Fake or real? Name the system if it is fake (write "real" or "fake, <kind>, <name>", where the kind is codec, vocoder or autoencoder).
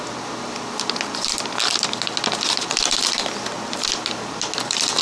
fake, vocoder, BigVGAN v2